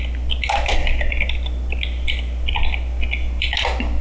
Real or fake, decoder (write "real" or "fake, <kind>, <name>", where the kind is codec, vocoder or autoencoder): real